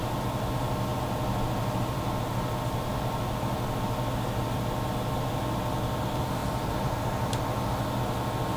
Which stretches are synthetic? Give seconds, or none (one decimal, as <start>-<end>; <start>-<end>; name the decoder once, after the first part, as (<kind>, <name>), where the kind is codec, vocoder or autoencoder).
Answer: 6.4-7.3 (vocoder, BigVGAN v2)